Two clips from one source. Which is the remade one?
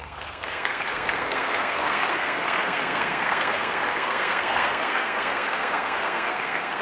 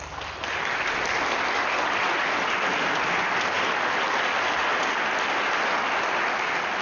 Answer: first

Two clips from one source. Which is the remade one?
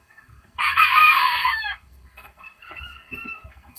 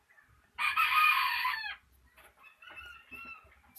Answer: first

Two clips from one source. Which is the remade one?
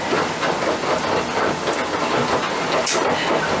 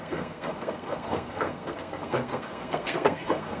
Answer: second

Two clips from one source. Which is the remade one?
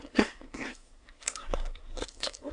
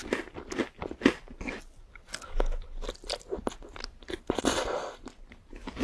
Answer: first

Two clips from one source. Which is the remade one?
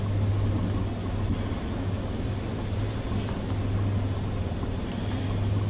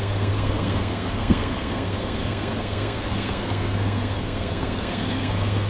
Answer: second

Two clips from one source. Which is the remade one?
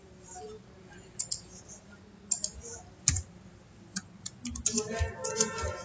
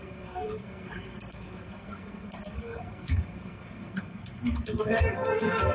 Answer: second